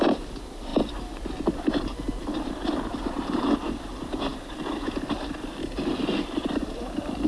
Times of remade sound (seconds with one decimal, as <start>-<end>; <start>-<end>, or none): none